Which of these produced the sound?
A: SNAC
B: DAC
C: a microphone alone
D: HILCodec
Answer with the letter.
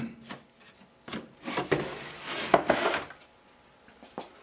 C